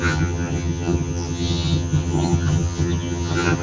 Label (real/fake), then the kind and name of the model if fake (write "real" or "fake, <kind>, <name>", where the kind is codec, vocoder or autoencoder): fake, vocoder, HiFi-GAN